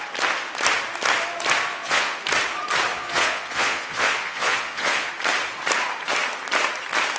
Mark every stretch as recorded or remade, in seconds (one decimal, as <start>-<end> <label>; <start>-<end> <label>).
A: 0.0-1.7 recorded; 1.7-2.2 remade; 2.2-2.9 recorded; 2.9-5.1 remade; 5.1-7.2 recorded